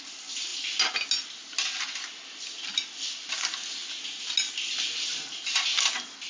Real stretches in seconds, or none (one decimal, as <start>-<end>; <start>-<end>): 0.0-6.3